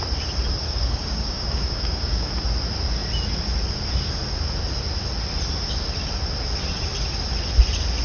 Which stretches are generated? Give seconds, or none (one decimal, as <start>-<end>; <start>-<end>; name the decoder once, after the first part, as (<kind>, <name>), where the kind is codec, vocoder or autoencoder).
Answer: 0.6-2.3 (codec, DAC)